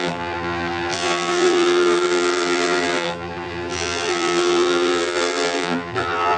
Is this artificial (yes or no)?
yes